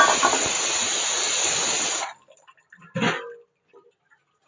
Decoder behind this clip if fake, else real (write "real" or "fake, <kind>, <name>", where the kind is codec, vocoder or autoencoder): real